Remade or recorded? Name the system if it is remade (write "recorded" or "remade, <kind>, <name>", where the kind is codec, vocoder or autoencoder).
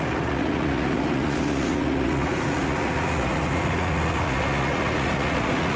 remade, vocoder, Vocos